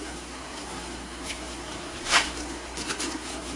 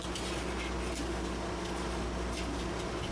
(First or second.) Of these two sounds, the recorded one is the second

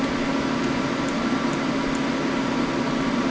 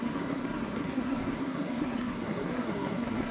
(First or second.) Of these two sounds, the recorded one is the first